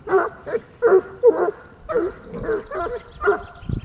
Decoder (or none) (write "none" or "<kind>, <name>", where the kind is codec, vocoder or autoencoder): none